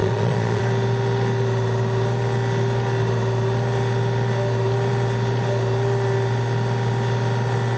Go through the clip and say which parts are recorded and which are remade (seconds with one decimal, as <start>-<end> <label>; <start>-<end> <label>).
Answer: 0.0-0.6 remade; 0.6-7.8 recorded